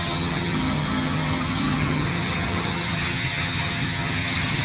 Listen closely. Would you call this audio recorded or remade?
remade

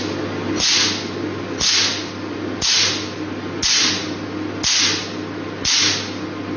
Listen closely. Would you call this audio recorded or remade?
recorded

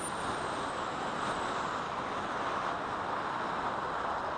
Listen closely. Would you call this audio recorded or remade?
recorded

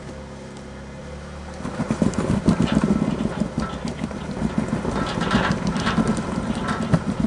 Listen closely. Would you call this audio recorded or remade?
recorded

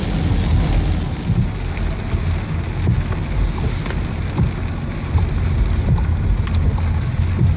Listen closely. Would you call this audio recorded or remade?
recorded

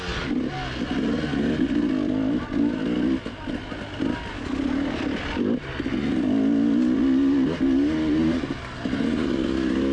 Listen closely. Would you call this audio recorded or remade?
recorded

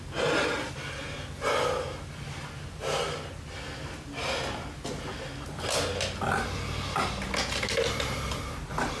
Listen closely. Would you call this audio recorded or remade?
recorded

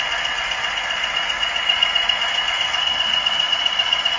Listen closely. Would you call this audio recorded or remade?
recorded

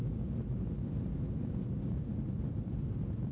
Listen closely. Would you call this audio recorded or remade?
recorded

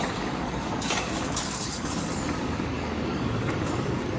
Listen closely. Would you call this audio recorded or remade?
remade